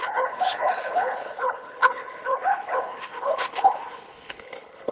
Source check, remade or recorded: remade